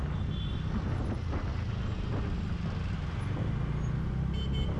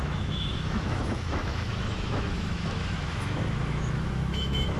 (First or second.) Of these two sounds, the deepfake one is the second